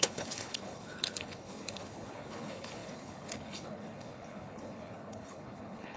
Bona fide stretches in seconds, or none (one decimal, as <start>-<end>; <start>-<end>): none